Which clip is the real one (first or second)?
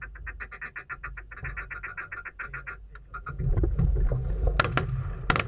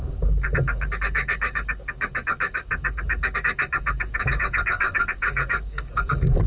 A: first